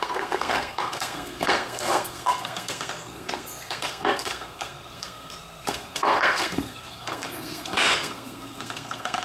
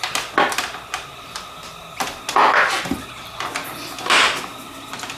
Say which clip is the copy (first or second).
first